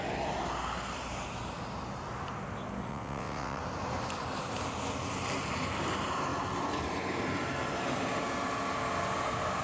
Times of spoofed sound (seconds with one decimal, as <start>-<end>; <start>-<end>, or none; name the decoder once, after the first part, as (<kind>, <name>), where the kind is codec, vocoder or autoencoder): 2.9-3.6 (vocoder, WaveNeXt)